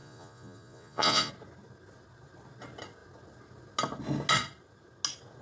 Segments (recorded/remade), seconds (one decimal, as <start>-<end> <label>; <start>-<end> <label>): 0.0-1.3 remade; 1.3-5.4 recorded